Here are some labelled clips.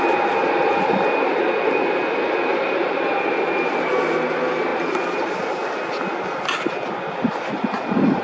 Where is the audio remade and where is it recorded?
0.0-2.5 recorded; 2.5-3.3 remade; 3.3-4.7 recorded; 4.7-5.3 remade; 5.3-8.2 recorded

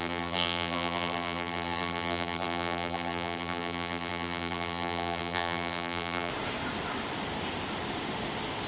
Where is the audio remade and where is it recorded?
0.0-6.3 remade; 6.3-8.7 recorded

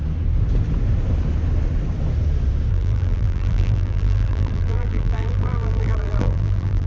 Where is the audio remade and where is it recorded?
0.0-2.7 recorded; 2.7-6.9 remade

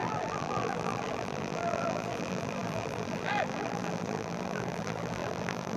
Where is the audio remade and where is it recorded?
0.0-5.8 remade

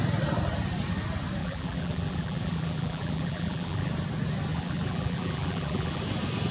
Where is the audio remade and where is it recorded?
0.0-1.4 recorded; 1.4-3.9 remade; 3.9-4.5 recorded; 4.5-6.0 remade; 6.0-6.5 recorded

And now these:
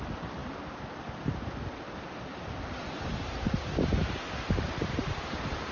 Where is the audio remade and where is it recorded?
0.0-3.9 remade; 3.9-5.0 recorded; 5.0-5.7 remade

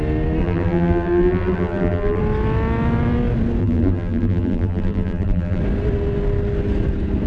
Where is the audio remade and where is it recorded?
0.0-0.4 recorded; 0.4-2.2 remade; 2.2-3.6 recorded; 3.6-5.6 remade; 5.6-7.3 recorded

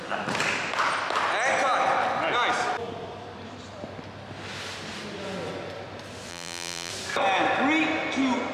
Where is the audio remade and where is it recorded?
0.0-6.3 recorded; 6.3-6.9 remade; 6.9-8.5 recorded